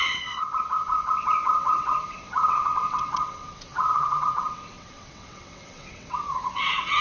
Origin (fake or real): fake